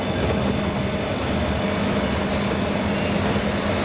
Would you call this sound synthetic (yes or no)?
no